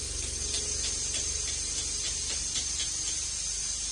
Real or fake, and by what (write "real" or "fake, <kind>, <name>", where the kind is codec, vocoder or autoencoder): real